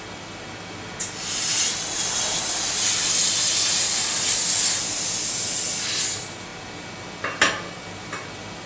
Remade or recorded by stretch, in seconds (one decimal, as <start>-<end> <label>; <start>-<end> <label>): 0.0-8.7 recorded